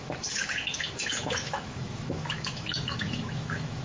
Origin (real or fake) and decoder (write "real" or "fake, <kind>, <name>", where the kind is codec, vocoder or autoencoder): fake, autoencoder, DAC-VAE